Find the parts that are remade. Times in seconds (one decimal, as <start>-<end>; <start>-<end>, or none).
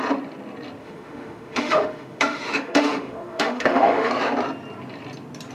0.8-4.1